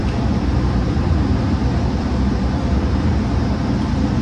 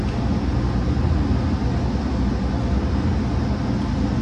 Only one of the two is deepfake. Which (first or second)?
first